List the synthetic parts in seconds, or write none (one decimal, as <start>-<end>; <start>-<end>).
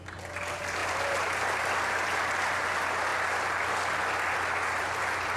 none